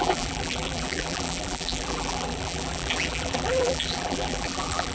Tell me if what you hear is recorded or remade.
remade